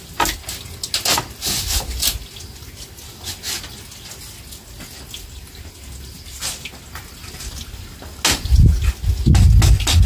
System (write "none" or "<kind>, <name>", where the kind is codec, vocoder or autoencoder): none